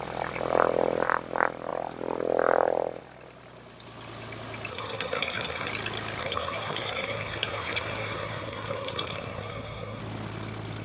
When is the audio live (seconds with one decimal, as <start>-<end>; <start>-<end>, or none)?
0.0-4.7; 5.7-6.2; 10.0-10.8